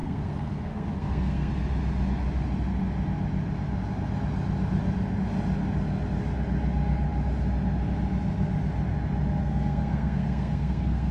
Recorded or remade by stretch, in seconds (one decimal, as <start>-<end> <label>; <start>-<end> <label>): 0.0-1.5 remade; 1.5-9.4 recorded; 9.4-11.1 remade